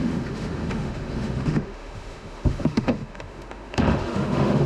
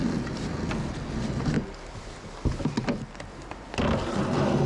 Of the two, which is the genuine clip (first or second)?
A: second